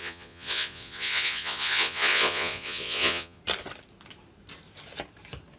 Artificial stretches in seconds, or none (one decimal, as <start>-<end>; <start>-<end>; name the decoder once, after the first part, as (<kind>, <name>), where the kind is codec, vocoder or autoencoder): 0.0-3.4 (vocoder, Vocos)